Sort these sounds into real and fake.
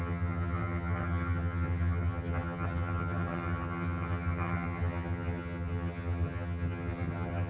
fake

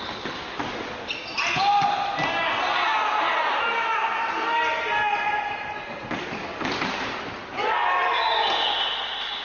real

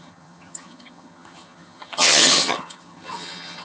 fake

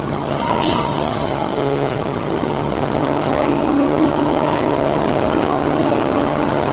fake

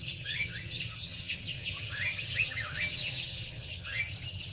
fake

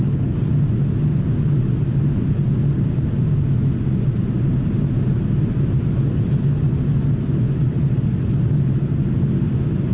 real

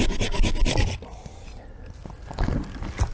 real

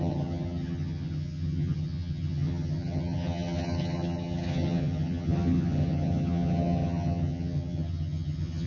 fake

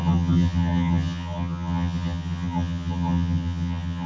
fake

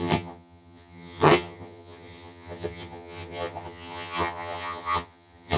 fake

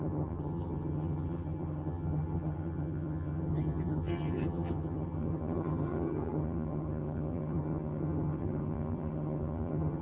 fake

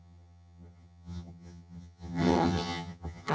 fake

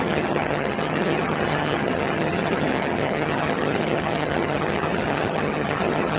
fake